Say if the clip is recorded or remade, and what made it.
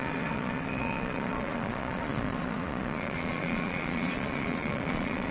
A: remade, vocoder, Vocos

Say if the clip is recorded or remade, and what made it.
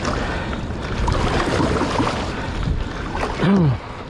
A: recorded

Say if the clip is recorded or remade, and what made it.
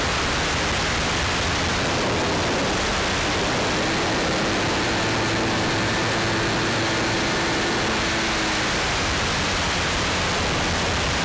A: recorded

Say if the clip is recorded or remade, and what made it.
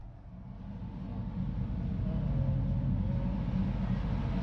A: recorded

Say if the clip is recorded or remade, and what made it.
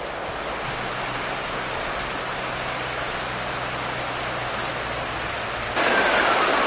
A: recorded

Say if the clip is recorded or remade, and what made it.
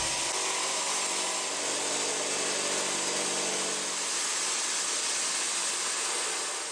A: recorded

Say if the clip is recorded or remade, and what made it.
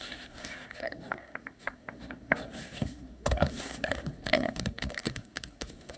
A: remade, codec, SNAC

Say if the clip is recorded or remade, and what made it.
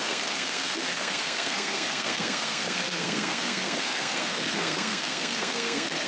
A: remade, codec, SNAC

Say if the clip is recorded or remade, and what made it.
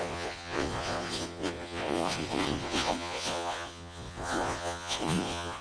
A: remade, vocoder, Vocos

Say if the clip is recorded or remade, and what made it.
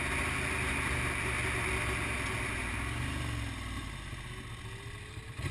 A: recorded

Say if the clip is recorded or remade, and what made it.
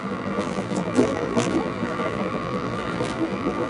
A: remade, vocoder, BigVGAN v2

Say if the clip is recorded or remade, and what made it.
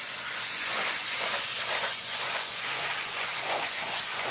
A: remade, vocoder, Vocos